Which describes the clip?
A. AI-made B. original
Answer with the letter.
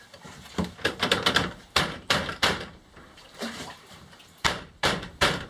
A